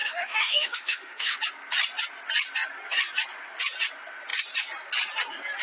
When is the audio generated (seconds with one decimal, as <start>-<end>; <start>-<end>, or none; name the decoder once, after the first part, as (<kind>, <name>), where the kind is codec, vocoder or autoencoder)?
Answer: 0.0-1.4 (autoencoder, DAC-VAE)